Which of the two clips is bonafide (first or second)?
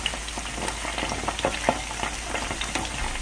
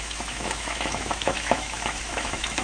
first